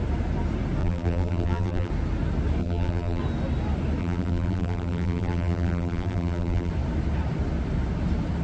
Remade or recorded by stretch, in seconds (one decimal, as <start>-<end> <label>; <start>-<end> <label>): 0.0-0.8 recorded; 0.8-1.9 remade; 1.9-2.6 recorded; 2.6-3.2 remade; 3.2-4.0 recorded; 4.0-6.7 remade; 6.7-8.4 recorded